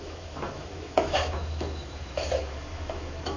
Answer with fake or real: fake